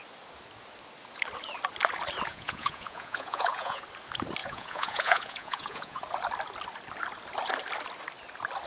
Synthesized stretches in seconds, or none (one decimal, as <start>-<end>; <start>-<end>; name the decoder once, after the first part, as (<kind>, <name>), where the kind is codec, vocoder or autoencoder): 2.3-3.8 (vocoder, Vocos); 4.4-6.0